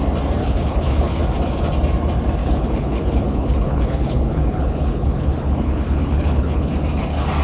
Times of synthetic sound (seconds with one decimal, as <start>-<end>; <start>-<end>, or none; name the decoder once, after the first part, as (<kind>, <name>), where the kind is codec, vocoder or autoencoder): 0.4-1.2 (codec, HILCodec); 2.4-6.7